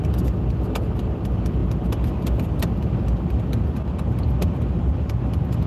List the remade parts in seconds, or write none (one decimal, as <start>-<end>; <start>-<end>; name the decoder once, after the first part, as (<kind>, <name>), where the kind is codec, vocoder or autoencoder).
none